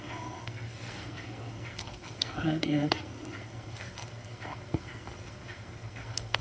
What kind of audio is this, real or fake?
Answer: fake